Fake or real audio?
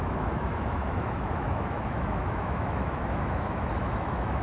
fake